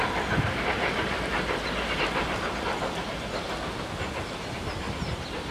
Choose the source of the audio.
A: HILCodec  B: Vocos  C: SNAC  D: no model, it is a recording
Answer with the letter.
D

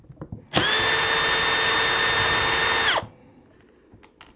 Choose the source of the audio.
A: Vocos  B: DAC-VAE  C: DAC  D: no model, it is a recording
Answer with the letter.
D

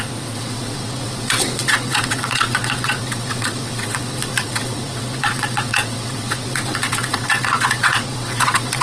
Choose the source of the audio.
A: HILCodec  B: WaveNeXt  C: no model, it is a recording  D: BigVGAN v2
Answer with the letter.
B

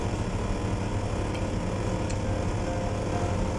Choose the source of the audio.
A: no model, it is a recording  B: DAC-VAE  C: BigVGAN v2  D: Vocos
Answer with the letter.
A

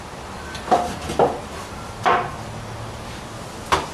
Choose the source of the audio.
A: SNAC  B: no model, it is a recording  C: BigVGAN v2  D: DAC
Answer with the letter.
B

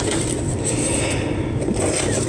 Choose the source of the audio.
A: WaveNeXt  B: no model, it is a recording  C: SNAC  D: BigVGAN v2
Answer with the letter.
B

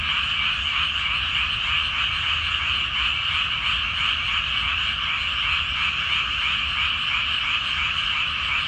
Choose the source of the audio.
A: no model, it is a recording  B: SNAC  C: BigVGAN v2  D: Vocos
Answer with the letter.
A